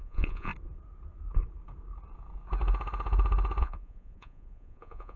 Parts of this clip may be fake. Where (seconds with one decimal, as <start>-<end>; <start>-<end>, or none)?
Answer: 0.0-0.5; 3.6-5.2